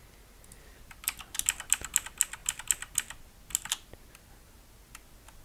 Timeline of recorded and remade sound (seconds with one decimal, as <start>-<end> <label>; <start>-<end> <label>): 0.0-5.4 recorded